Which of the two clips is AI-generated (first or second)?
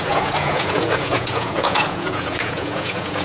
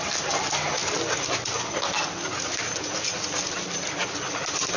first